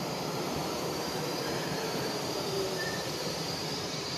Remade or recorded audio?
remade